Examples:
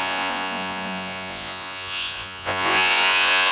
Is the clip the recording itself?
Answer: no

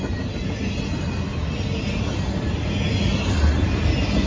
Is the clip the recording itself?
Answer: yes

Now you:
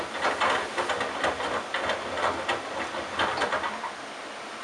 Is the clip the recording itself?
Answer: yes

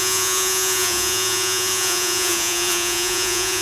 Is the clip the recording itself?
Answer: no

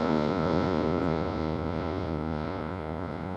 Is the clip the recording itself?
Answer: no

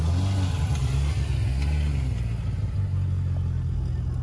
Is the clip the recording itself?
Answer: yes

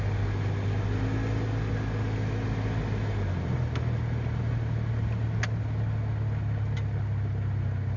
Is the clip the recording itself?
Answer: yes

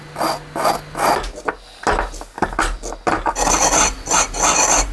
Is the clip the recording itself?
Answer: yes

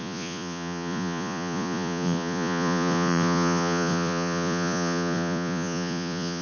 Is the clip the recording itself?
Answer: no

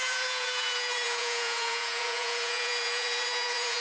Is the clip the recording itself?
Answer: no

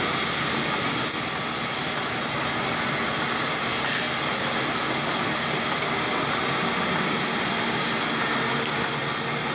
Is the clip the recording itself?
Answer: yes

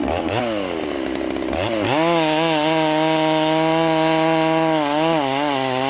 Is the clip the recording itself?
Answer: yes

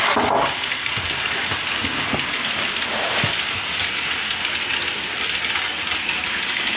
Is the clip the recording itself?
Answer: yes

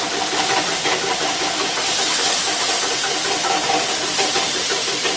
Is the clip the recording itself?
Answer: yes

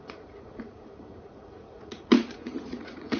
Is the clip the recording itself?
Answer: no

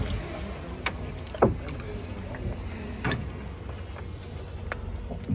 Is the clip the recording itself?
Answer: yes